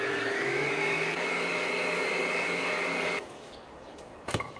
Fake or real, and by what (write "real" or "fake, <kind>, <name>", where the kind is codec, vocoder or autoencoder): fake, codec, DAC